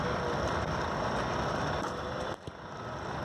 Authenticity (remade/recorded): recorded